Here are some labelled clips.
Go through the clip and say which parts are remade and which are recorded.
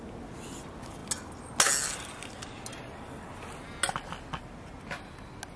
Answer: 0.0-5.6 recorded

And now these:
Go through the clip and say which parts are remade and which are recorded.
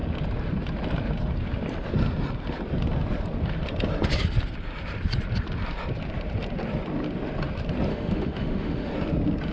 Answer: 0.0-7.9 recorded; 7.9-8.9 remade; 8.9-9.5 recorded